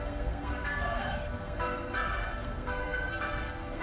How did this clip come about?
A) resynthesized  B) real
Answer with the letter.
A